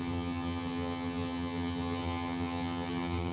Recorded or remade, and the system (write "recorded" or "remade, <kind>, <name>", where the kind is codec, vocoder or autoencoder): remade, vocoder, HiFi-GAN